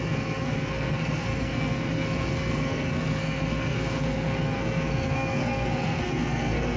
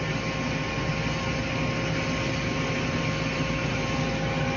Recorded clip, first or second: second